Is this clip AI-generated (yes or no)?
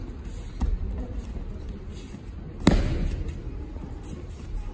no